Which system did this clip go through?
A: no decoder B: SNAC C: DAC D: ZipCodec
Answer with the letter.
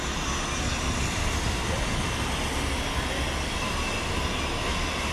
A